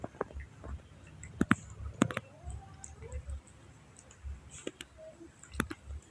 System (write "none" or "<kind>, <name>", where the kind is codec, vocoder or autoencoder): none